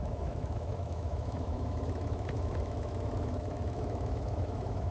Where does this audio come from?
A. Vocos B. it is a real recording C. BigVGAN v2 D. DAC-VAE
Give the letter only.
D